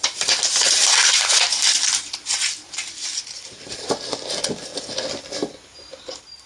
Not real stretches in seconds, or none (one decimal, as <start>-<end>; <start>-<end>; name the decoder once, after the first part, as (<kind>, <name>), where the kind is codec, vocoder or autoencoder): 2.3-4.3 (vocoder, BigVGAN v2); 4.7-5.2